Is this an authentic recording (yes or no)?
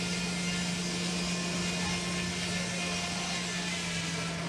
yes